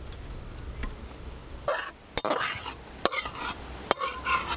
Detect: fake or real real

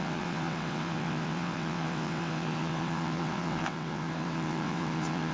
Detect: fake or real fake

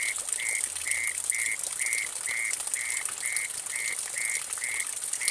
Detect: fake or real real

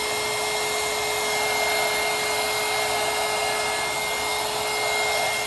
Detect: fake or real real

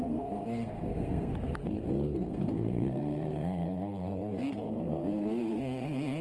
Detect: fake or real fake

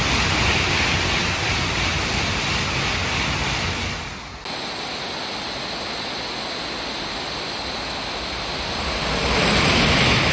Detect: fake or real real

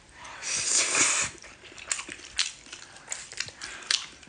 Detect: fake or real real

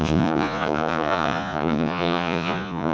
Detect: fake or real fake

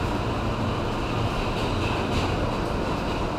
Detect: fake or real real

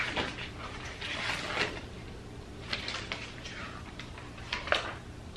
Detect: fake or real real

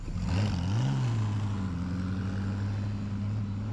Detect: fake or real real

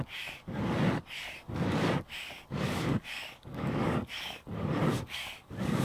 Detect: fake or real fake